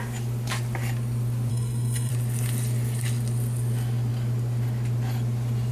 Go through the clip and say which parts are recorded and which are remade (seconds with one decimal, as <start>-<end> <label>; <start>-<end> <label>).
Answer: 0.0-1.5 recorded; 1.5-2.1 remade; 2.1-5.7 recorded